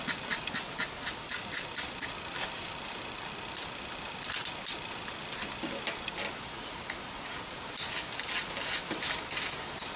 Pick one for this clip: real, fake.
real